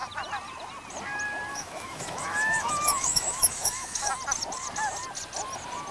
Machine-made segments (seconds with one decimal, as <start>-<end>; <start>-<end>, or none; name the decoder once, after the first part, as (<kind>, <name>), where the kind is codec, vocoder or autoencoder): 1.5-4.1 (autoencoder, DAC-VAE)